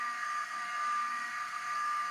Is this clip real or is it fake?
fake